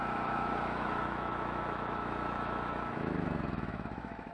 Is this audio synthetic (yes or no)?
yes